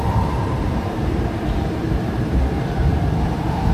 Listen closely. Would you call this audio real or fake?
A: fake